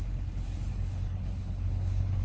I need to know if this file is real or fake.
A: fake